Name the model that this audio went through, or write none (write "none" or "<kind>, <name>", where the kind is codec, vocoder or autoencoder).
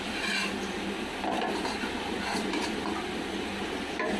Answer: none